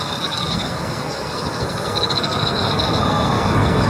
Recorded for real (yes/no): no